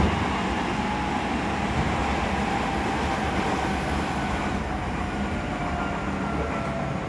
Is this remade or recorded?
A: recorded